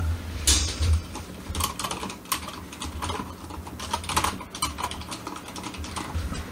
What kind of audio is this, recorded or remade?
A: recorded